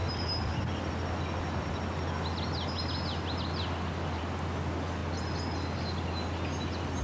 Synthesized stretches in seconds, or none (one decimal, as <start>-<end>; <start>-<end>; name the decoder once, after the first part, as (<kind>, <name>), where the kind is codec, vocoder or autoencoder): none